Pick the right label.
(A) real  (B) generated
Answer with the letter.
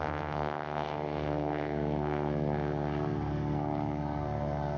B